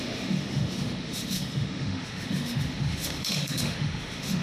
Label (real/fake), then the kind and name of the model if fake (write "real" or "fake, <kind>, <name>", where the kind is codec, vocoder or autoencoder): fake, autoencoder, DAC-VAE